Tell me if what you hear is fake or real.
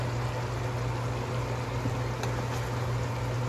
real